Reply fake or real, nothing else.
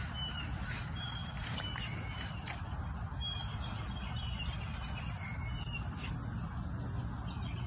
real